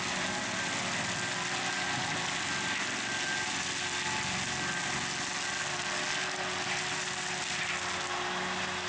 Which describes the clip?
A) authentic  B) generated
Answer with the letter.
A